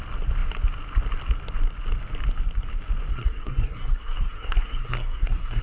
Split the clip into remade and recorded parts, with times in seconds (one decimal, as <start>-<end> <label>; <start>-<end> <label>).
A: 0.0-3.1 recorded; 3.1-5.6 remade